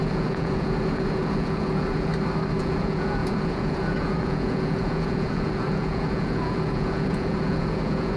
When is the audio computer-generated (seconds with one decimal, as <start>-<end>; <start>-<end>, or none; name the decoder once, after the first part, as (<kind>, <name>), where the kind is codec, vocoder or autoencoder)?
0.0-2.1 (vocoder, Vocos); 2.6-8.2